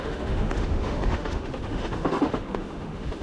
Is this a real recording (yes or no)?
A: no